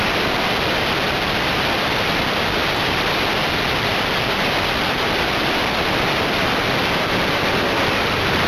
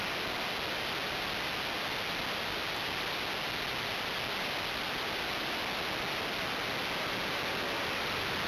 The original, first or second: second